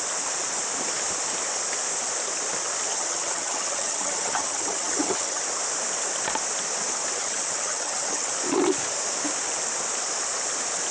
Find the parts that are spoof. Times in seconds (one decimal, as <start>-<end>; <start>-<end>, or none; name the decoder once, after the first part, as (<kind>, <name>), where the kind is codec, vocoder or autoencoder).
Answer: 2.9-5.4 (vocoder, HiFi-GAN); 7.2-8.3